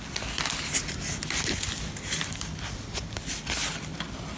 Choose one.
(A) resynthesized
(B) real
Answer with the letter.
B